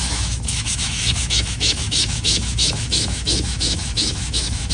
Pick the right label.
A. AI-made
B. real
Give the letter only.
A